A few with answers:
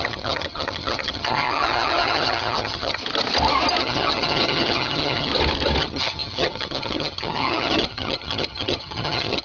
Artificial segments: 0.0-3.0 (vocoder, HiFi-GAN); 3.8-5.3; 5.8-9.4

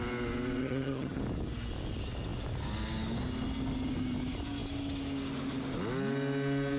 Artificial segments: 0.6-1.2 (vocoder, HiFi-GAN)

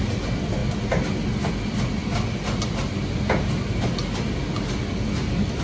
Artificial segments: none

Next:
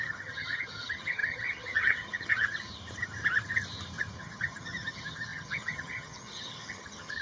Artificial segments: 0.0-2.7 (vocoder, HiFi-GAN); 4.2-7.2

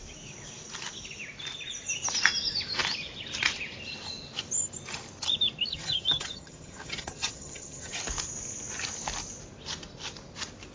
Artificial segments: 5.7-8.0 (vocoder, HiFi-GAN)

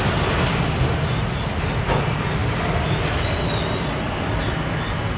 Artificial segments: none